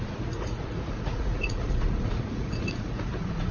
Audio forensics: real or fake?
fake